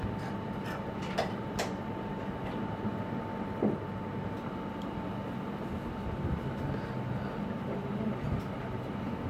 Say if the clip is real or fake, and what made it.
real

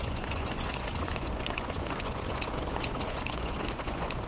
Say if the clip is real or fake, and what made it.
fake, vocoder, Vocos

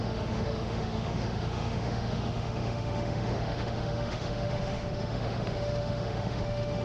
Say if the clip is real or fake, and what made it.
fake, autoencoder, DAC-VAE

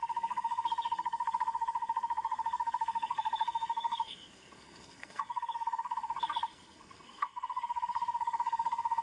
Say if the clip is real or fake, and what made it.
fake, codec, SNAC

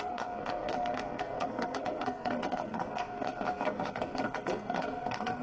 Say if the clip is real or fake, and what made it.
fake, codec, SNAC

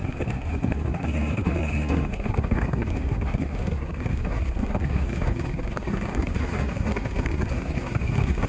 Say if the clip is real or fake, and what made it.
fake, codec, SNAC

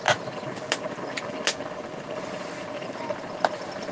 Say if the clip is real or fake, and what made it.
real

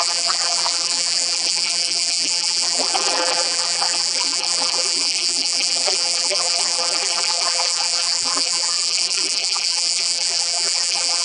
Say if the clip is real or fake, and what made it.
fake, vocoder, BigVGAN v2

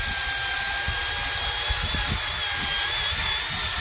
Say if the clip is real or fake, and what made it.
real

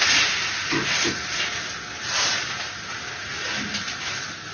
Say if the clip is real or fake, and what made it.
real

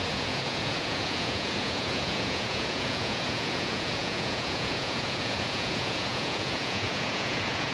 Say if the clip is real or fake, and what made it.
fake, vocoder, Vocos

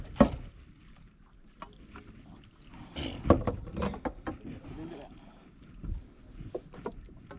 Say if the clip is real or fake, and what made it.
real